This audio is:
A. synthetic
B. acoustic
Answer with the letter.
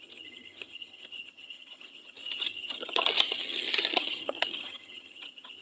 A